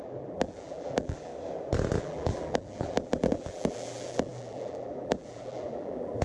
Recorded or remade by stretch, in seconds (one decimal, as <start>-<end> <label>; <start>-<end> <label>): 0.0-1.3 remade; 1.3-2.0 recorded; 2.0-6.2 remade